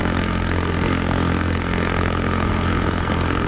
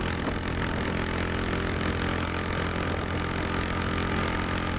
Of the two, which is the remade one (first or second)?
first